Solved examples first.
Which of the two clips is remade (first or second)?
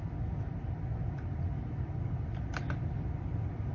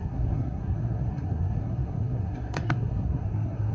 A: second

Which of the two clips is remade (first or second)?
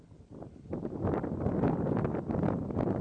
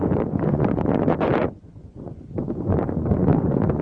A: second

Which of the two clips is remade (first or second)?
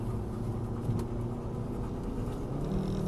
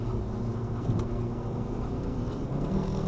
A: second